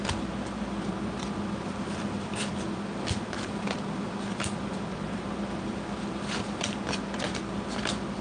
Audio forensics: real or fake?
real